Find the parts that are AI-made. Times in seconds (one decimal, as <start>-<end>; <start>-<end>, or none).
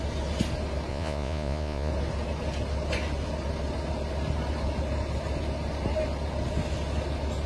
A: 0.9-1.9